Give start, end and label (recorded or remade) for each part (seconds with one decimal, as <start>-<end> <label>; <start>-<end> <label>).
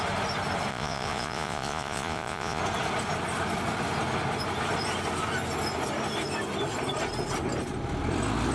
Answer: 0.0-0.7 recorded; 0.7-2.6 remade; 2.6-8.5 recorded